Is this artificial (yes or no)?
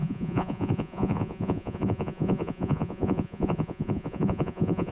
yes